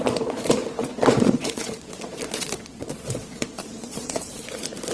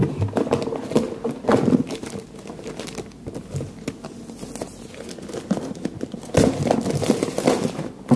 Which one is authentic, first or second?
second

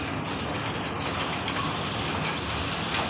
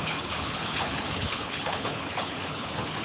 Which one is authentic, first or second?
first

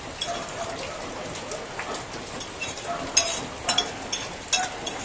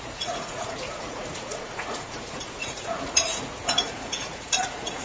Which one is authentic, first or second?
first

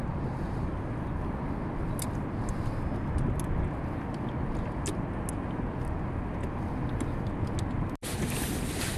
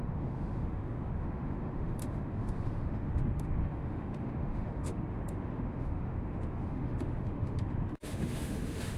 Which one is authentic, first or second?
first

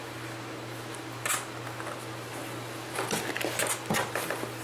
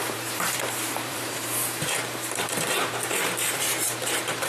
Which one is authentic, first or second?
first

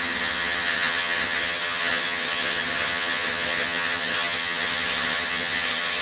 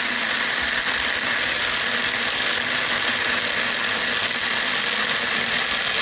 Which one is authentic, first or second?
second